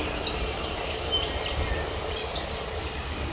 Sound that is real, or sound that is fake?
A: real